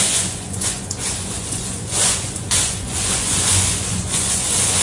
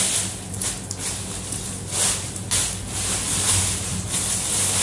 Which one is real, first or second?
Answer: second